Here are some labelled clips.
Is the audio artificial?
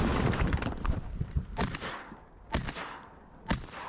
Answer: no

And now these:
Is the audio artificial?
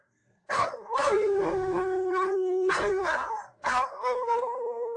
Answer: yes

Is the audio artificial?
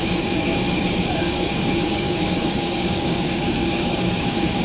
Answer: yes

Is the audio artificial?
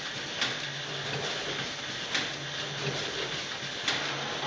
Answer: no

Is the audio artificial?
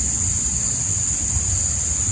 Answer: no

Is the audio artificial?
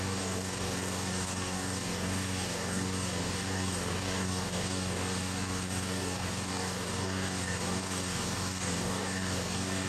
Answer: yes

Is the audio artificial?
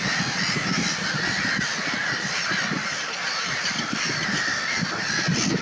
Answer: no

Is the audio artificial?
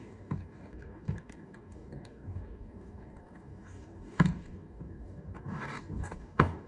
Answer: yes